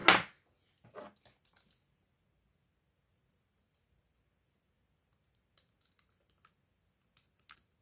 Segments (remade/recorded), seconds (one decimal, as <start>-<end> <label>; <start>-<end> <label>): 0.0-7.8 recorded